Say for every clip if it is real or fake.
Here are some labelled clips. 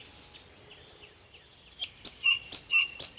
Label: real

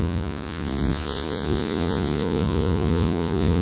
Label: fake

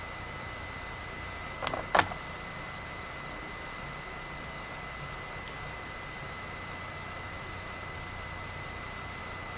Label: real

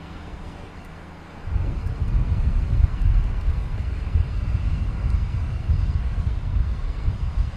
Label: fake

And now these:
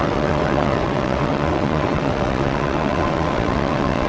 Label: fake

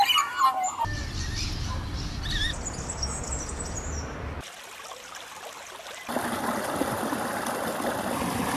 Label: real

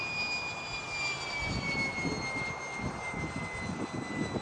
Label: real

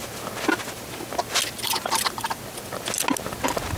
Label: real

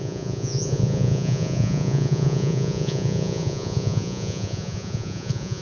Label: fake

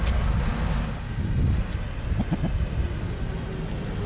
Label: real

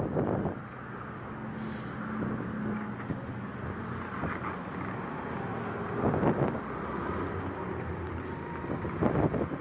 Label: real